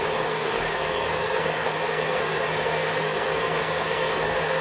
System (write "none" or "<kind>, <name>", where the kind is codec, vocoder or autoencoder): codec, SNAC